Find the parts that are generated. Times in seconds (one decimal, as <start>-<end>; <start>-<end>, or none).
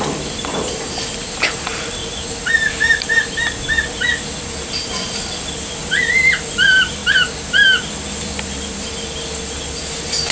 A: 0.0-2.0; 4.7-7.0; 8.1-10.3